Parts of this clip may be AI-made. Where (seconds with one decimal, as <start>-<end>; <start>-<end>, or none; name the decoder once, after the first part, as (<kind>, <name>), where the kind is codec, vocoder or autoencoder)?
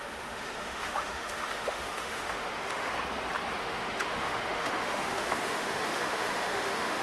0.0-2.9 (autoencoder, DAC-VAE); 3.6-7.0